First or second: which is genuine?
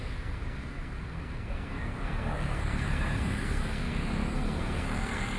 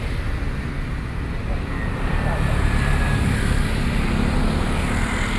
second